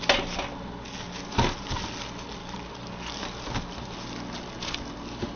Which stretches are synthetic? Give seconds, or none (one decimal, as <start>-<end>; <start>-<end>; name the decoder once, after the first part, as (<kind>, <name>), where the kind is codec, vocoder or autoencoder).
2.4-3.2 (codec, DAC)